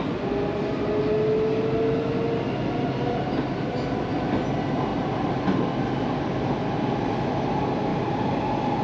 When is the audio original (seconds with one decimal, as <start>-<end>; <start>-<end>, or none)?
0.0-7.9; 8.4-8.8